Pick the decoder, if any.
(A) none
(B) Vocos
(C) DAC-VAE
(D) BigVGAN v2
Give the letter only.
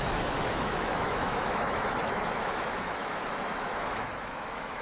C